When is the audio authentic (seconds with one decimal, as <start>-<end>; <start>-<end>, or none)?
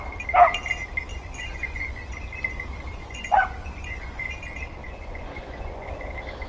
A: 0.0-1.1; 2.1-3.0; 4.3-4.8; 5.9-6.5